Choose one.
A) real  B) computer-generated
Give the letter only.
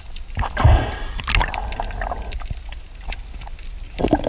A